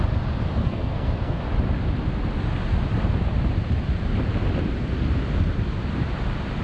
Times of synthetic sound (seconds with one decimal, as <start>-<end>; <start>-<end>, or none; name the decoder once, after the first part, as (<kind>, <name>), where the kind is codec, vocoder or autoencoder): 0.6-1.4 (codec, SNAC)